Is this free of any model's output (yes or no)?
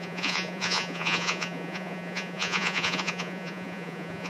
no